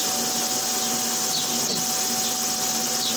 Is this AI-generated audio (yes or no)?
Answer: no